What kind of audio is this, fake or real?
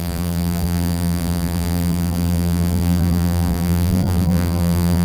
fake